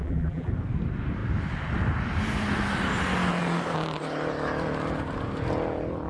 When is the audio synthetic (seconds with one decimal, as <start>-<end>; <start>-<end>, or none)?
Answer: 0.0-0.5